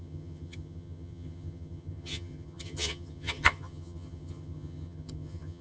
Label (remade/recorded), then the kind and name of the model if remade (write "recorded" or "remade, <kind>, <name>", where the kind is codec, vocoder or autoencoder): remade, vocoder, HiFi-GAN